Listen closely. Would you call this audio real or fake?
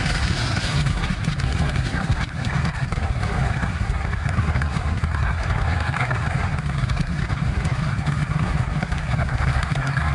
fake